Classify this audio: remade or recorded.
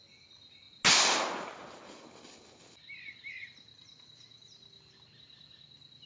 recorded